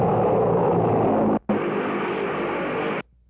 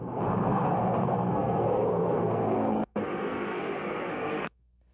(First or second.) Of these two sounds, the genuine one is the first